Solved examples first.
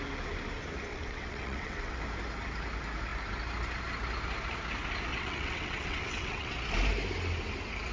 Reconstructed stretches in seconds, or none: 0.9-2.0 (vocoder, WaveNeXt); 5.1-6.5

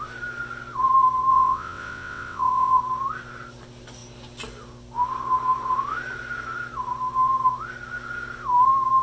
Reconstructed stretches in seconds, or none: 1.3-2.8 (vocoder, WaveNeXt)